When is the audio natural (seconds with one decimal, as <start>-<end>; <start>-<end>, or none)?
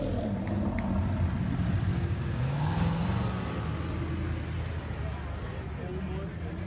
0.0-1.9; 2.7-6.7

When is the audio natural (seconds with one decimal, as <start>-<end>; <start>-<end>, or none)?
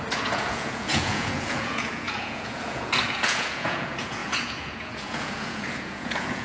none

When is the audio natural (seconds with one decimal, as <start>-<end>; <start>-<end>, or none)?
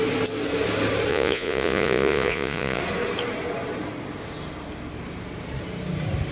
0.0-1.1; 2.8-6.3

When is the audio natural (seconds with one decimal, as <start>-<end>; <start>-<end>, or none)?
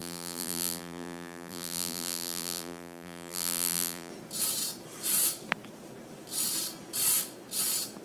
4.1-8.0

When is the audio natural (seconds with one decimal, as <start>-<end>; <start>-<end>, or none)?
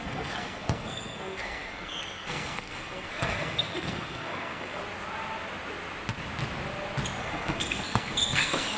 4.8-7.2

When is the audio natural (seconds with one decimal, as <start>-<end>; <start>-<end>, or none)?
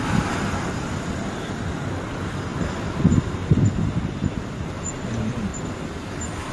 0.0-6.5